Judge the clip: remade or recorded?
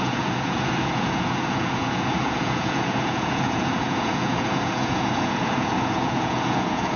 remade